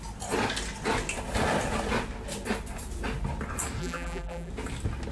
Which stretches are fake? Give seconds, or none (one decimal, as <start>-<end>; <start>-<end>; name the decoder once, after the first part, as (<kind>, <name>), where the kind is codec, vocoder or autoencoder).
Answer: 3.8-4.5 (vocoder, BigVGAN v2)